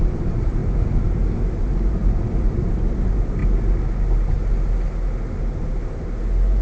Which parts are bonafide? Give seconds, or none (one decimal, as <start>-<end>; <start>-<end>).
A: 0.6-1.6; 3.4-6.6